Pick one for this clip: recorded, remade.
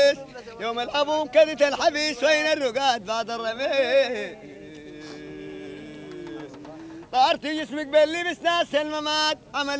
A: recorded